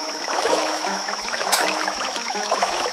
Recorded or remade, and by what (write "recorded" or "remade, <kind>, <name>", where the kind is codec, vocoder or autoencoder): remade, autoencoder, DAC-VAE